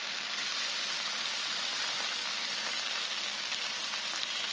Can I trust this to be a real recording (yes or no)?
yes